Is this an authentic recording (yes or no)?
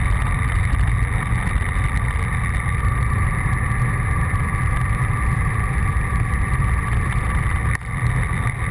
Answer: yes